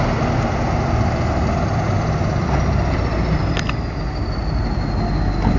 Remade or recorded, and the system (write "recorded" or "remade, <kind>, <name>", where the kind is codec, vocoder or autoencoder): recorded